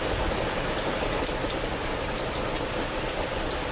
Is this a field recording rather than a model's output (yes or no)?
yes